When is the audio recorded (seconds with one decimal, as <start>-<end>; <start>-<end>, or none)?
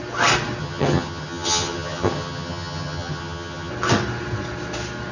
0.0-0.6; 3.7-5.1